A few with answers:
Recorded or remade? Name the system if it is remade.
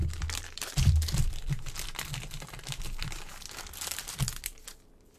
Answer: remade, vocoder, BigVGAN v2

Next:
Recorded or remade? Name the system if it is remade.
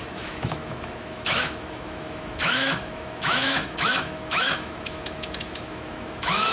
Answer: remade, autoencoder, DAC-VAE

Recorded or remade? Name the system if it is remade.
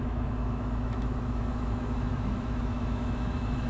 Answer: remade, autoencoder, DAC-VAE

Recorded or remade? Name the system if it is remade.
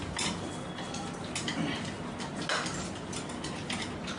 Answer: recorded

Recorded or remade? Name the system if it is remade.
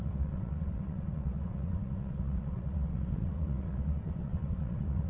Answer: remade, vocoder, WaveNeXt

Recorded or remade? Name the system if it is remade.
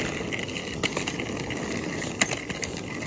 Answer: recorded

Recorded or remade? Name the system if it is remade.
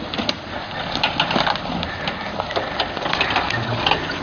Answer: recorded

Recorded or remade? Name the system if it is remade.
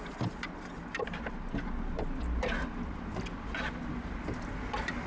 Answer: recorded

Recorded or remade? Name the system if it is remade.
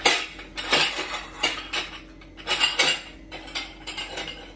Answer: recorded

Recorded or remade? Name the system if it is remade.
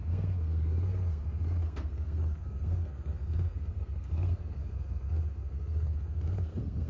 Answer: remade, codec, SNAC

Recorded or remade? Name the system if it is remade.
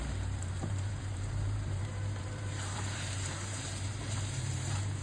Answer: remade, vocoder, BigVGAN v2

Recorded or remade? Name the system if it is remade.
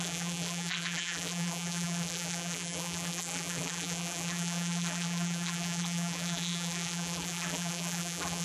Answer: remade, vocoder, BigVGAN v2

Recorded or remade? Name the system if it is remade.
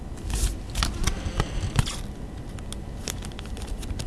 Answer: recorded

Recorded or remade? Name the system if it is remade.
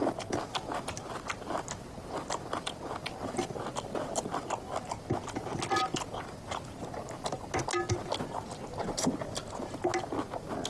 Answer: recorded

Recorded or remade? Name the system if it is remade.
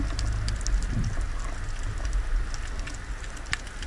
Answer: recorded